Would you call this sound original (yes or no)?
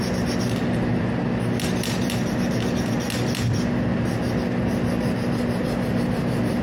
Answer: yes